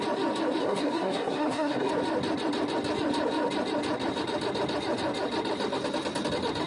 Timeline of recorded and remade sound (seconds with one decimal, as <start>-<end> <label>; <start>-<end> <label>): 0.0-0.6 recorded; 0.6-1.9 remade; 1.9-6.7 recorded